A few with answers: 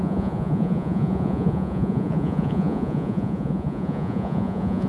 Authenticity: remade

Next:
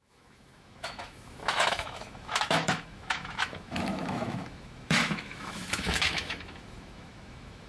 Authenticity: remade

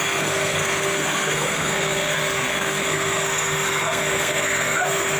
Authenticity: remade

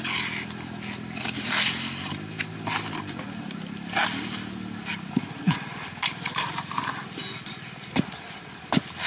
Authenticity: recorded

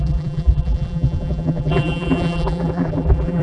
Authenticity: remade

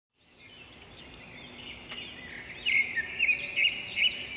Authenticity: recorded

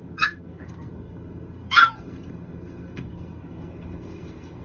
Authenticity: remade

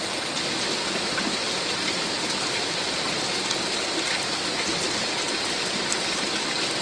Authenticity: recorded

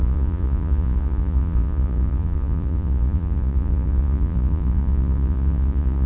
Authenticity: remade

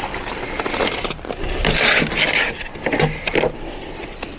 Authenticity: recorded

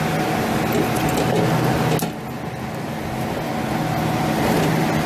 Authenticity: recorded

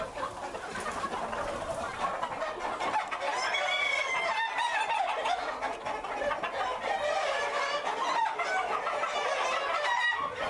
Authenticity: recorded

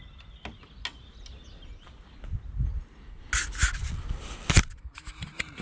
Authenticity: recorded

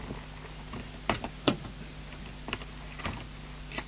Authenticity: recorded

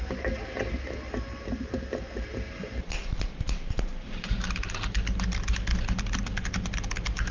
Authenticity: recorded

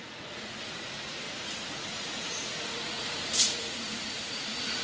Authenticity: remade